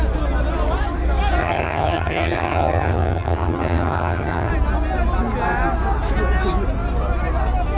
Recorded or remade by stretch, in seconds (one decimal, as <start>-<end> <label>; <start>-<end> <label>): 0.0-1.4 recorded; 1.4-4.5 remade; 4.5-7.8 recorded